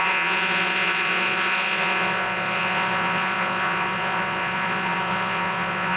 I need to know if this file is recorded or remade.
remade